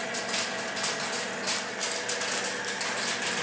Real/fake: real